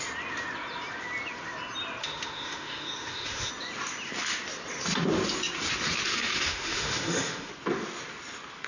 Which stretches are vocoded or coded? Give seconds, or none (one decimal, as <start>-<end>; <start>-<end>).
2.0-3.5; 6.1-7.5